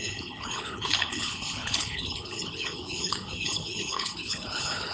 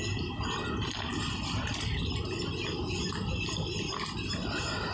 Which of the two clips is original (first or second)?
second